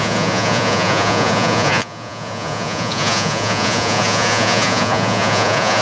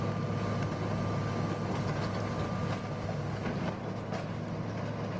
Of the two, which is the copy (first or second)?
first